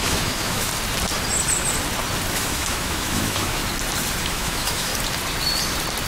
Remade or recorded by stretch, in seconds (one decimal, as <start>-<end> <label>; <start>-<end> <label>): 0.0-0.7 remade; 0.7-2.3 recorded; 2.3-3.6 remade; 3.6-4.2 recorded; 4.2-4.9 remade; 4.9-6.1 recorded